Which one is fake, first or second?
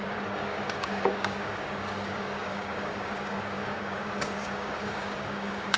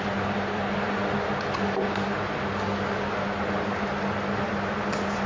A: first